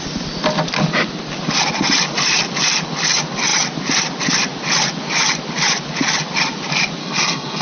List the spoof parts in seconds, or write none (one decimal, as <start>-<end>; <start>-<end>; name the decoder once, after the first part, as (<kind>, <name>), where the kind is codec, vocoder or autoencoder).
7.0-7.6 (codec, SNAC)